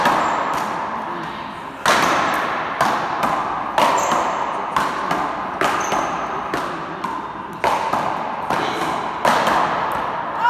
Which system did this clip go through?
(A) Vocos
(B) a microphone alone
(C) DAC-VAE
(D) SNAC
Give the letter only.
B